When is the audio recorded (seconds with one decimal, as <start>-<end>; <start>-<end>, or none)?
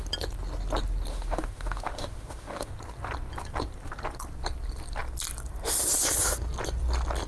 0.0-1.1; 2.7-7.3